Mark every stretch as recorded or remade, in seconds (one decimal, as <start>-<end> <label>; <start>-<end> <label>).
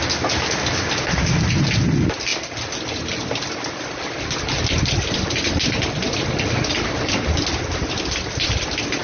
0.0-9.0 recorded